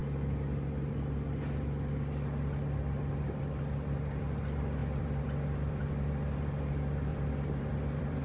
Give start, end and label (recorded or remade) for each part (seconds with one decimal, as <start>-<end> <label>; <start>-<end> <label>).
0.0-4.8 recorded; 4.8-5.9 remade; 5.9-7.1 recorded; 7.1-8.2 remade